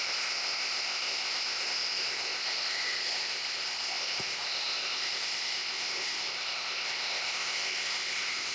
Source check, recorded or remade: remade